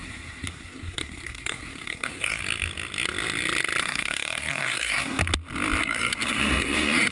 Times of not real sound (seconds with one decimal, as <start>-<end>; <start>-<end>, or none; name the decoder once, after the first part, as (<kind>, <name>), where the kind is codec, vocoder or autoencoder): 0.0-2.4 (codec, SNAC); 3.8-5.2; 5.8-7.1